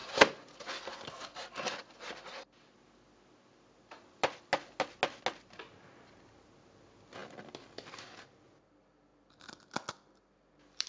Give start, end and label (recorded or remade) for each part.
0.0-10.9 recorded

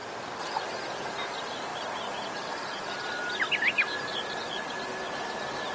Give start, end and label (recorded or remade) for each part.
0.0-1.1 remade; 1.1-5.7 recorded

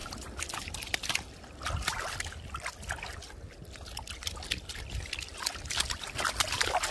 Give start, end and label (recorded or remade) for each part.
0.0-6.9 recorded

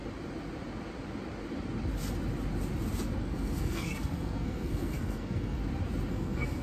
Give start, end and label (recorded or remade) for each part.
0.0-3.2 recorded; 3.2-5.6 remade; 5.6-6.1 recorded; 6.1-6.6 remade

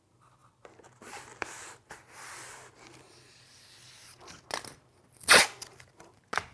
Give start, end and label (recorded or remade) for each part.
0.0-6.5 recorded